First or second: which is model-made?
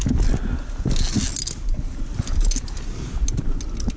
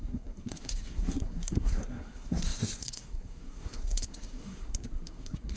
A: second